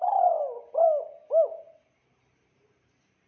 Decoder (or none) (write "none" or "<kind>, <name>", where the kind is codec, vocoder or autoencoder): none